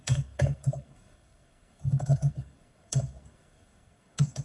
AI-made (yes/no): yes